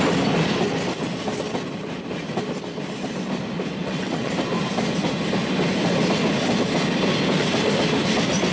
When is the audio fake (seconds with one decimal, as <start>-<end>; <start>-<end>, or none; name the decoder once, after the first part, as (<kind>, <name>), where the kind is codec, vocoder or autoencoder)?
3.8-4.3 (vocoder, WaveNeXt)